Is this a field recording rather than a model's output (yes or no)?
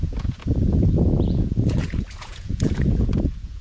no